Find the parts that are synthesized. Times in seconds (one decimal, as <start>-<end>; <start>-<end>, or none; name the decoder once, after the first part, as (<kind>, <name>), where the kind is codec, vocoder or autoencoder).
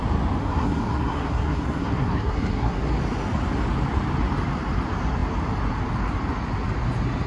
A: 0.4-2.9 (codec, SNAC)